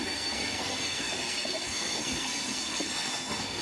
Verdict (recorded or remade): remade